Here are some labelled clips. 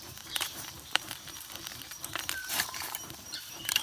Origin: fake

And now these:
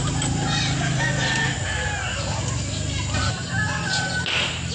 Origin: real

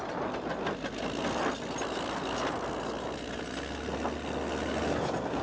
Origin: real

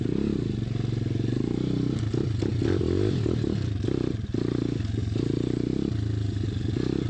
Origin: real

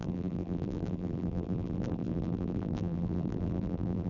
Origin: fake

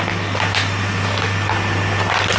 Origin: real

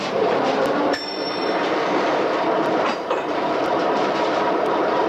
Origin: fake